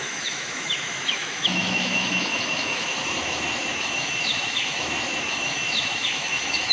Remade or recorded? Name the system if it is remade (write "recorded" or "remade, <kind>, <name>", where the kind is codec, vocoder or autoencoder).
remade, autoencoder, DAC-VAE